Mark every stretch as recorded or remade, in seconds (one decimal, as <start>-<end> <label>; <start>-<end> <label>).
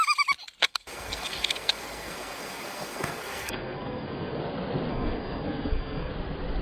0.0-0.6 recorded; 0.6-4.4 remade; 4.4-4.9 recorded; 4.9-6.1 remade; 6.1-6.6 recorded